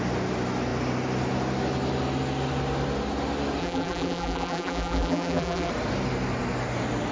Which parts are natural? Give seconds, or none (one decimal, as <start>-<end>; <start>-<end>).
0.0-3.6; 5.7-7.1